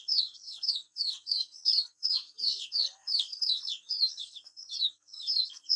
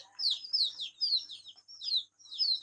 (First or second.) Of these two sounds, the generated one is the first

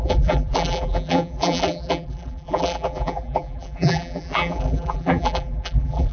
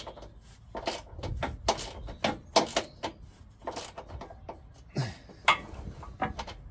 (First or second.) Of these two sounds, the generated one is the first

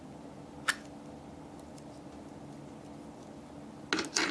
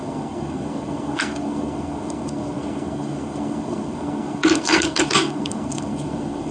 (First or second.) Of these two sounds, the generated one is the second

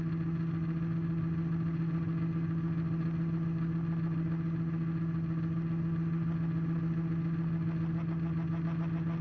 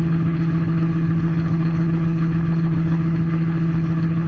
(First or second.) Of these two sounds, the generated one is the second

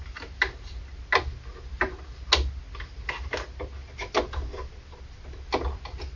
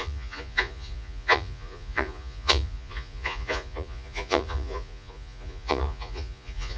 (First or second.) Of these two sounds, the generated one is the second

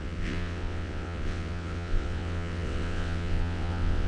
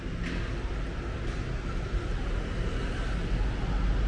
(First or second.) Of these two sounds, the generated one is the first